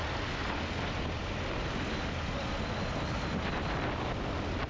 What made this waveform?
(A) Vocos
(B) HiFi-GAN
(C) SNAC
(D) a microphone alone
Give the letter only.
D